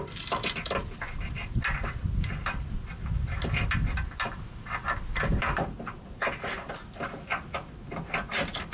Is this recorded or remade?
recorded